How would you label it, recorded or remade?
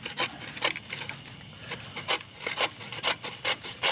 recorded